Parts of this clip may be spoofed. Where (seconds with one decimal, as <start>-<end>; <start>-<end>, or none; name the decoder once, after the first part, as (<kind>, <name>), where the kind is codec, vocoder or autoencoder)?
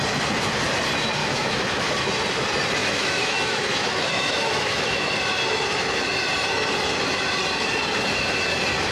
1.2-1.9 (autoencoder, DAC-VAE); 2.8-5.0